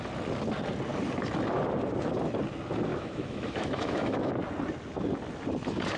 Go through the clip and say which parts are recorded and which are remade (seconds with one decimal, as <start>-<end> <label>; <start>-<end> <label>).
0.0-2.9 recorded; 2.9-4.3 remade; 4.3-6.0 recorded